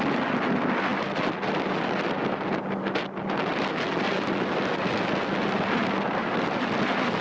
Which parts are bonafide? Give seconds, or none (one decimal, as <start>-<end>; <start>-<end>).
0.0-7.2